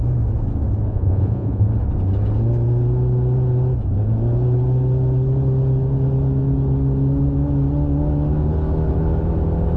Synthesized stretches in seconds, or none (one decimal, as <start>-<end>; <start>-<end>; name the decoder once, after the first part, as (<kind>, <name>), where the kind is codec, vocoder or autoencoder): 0.9-1.7 (vocoder, Vocos)